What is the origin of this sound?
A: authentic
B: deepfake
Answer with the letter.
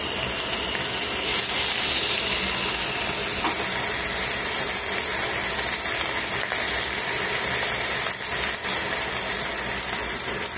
A